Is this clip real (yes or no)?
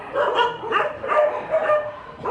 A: no